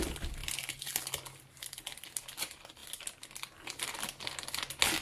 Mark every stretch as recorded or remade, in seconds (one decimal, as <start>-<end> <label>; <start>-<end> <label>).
0.0-5.0 recorded